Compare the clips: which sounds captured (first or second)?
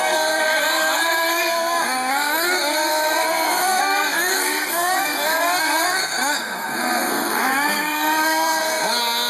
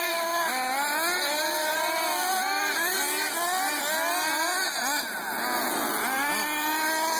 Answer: second